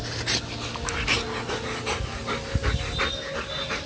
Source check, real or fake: real